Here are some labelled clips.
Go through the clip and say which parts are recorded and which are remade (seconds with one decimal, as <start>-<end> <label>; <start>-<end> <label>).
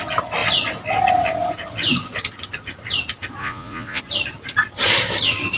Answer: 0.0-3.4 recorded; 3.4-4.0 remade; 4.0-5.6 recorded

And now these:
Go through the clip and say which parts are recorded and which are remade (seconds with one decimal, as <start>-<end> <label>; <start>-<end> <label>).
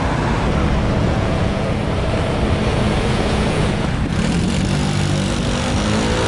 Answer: 0.0-1.0 recorded; 1.0-1.8 remade; 1.8-2.7 recorded; 2.7-3.9 remade; 3.9-6.3 recorded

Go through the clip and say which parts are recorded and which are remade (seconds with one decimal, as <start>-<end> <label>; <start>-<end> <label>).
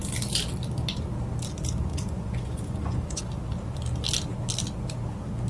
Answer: 0.0-1.9 recorded; 1.9-3.2 remade; 3.2-5.5 recorded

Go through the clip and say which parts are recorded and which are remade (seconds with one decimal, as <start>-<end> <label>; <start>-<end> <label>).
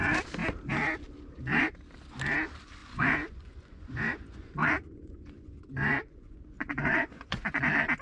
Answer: 0.0-2.8 recorded; 2.8-7.6 remade; 7.6-8.0 recorded